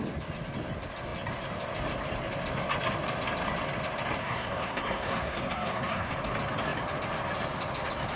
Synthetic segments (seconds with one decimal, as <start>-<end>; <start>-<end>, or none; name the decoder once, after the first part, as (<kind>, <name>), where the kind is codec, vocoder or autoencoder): 4.2-6.1 (codec, SNAC)